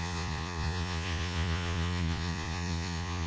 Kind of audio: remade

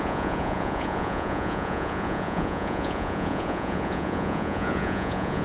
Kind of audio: remade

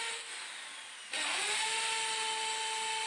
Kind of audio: recorded